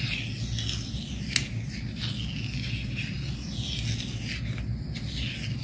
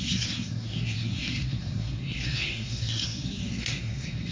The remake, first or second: second